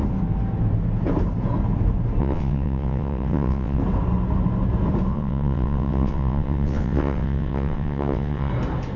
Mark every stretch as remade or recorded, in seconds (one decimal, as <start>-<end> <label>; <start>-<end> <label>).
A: 0.0-2.2 recorded; 2.2-3.8 remade; 3.8-5.1 recorded; 5.1-8.5 remade; 8.5-9.0 recorded